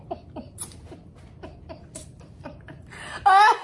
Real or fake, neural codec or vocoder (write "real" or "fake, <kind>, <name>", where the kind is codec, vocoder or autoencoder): real